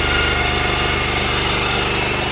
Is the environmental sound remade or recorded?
recorded